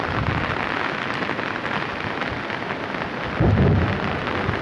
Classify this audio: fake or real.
real